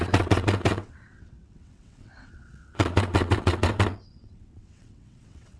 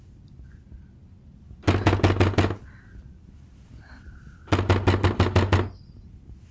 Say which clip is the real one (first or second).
second